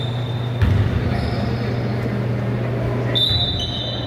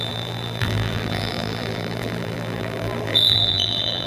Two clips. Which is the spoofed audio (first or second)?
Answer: second